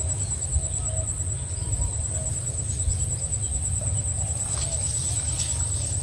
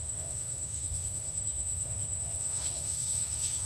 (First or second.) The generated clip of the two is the second